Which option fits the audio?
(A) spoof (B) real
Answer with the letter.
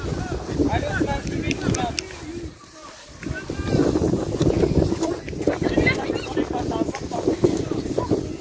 B